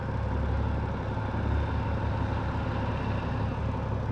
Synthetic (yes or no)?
no